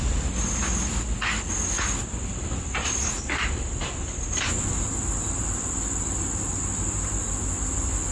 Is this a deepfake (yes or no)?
no